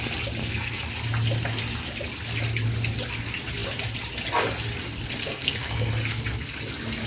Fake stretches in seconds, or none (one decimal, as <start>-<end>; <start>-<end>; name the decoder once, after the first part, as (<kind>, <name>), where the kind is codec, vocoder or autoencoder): 0.4-0.9 (codec, SNAC); 5.2-5.9